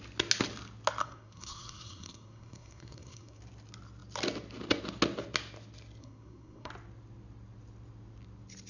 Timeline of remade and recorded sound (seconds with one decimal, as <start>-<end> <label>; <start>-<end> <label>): 0.0-1.0 recorded; 1.0-3.4 remade; 3.4-6.0 recorded; 6.0-6.7 remade; 6.7-8.7 recorded